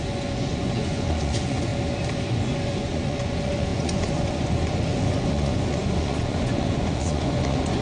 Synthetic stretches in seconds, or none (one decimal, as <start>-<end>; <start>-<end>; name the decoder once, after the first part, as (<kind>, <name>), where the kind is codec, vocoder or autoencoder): 0.0-1.7 (vocoder, Vocos); 2.3-7.8